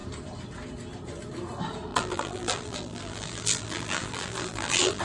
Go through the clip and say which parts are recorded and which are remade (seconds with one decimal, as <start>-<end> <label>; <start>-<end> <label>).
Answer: 0.0-1.9 recorded; 1.9-5.0 remade